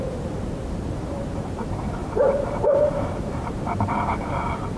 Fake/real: fake